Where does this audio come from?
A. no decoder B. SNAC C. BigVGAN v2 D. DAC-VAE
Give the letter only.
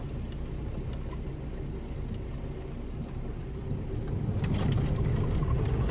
A